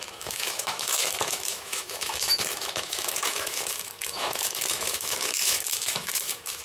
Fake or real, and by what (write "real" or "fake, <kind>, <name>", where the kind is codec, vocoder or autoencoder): fake, autoencoder, DAC-VAE